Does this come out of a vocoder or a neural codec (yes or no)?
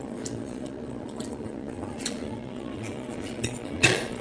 yes